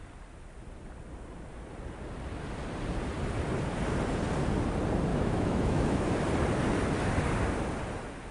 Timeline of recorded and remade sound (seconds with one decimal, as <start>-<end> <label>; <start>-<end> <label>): 0.0-5.1 recorded; 5.1-6.1 remade; 6.1-8.3 recorded

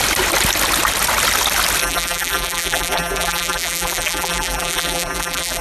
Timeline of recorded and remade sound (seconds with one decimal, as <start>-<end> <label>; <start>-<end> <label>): 0.0-1.8 recorded; 1.8-5.6 remade

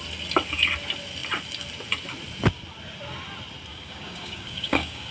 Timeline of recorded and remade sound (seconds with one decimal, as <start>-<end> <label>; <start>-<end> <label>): 0.0-3.7 recorded; 3.7-5.1 remade

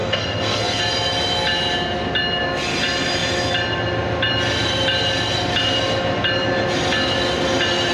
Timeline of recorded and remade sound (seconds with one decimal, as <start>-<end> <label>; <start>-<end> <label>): 0.0-0.8 remade; 0.8-7.9 recorded

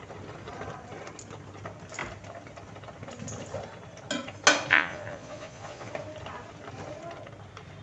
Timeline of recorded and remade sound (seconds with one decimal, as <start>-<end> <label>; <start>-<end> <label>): 0.0-4.7 recorded; 4.7-5.9 remade; 5.9-7.8 recorded

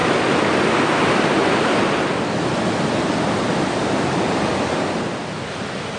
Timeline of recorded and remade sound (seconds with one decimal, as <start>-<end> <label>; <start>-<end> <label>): 0.0-4.5 recorded; 4.5-5.2 remade; 5.2-6.0 recorded

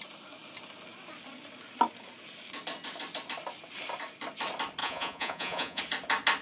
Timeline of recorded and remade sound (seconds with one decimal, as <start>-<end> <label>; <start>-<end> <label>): 0.0-4.8 recorded; 4.8-5.8 remade; 5.8-6.4 recorded